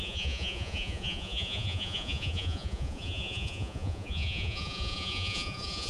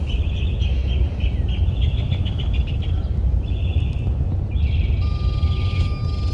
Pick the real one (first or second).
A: second